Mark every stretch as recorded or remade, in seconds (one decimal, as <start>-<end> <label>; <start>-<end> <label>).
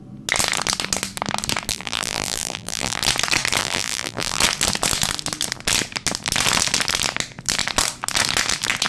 0.0-1.7 recorded; 1.7-3.0 remade; 3.0-3.6 recorded; 3.6-4.4 remade; 4.4-8.9 recorded